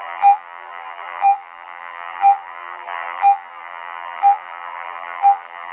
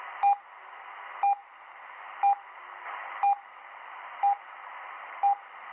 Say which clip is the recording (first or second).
second